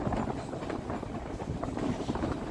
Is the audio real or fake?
fake